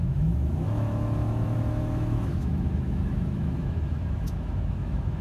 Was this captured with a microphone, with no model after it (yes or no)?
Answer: no